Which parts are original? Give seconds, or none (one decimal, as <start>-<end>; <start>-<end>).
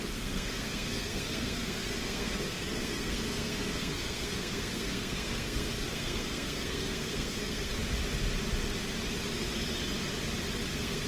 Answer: 7.7-10.7